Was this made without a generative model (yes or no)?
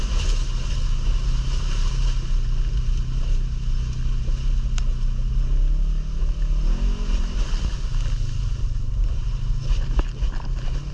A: yes